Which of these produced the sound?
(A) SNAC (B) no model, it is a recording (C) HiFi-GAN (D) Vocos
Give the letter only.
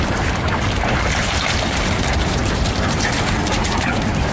B